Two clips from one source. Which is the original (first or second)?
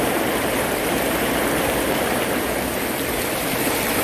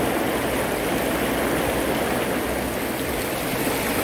second